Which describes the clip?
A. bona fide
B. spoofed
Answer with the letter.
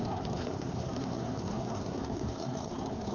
B